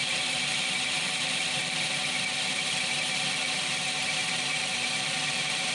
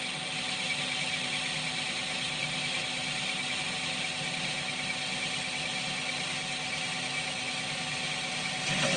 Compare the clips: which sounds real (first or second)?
second